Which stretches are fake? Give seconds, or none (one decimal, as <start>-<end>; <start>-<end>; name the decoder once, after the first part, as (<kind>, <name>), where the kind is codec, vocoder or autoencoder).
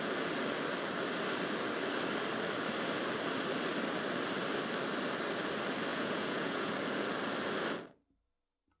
5.9-6.7 (vocoder, Vocos)